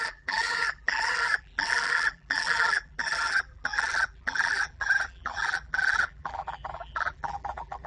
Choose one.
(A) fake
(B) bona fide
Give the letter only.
A